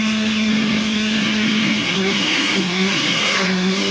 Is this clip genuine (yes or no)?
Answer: no